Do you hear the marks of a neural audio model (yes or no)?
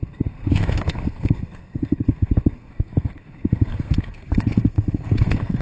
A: yes